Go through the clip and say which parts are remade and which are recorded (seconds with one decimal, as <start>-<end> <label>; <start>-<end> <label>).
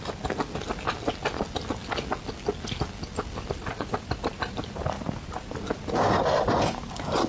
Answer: 0.0-7.3 recorded